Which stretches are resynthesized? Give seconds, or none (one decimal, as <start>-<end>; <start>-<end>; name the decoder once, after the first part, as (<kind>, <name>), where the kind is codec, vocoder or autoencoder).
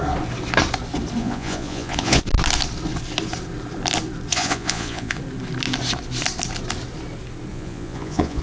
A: 1.2-2.2 (vocoder, Vocos); 4.3-5.2; 7.5-8.4